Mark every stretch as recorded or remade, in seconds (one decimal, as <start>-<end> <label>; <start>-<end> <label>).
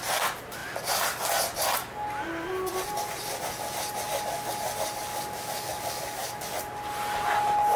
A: 0.0-5.0 recorded; 5.0-6.3 remade; 6.3-7.8 recorded